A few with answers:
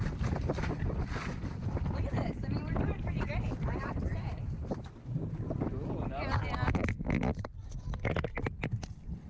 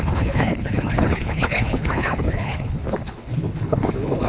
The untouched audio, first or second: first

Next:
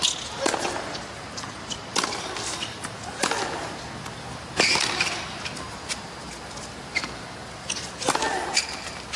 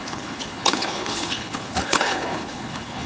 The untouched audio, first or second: first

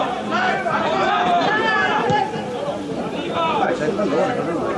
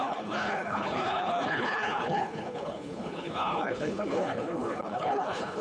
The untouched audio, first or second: first